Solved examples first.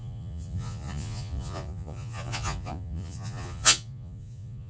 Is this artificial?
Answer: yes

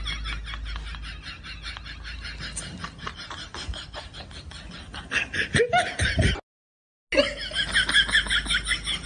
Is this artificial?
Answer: no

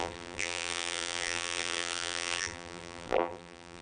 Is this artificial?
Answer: yes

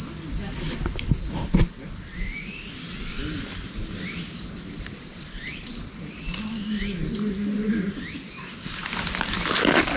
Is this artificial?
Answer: no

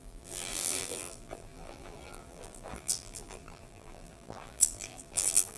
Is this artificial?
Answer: yes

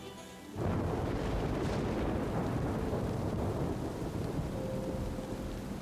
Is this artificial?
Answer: no